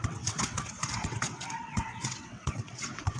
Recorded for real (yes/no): no